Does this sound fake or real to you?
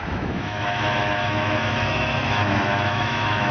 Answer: fake